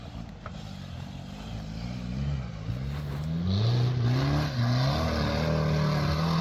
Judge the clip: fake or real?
real